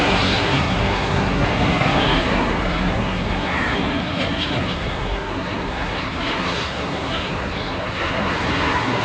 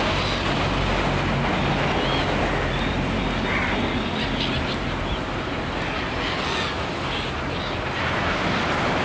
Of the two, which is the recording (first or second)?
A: second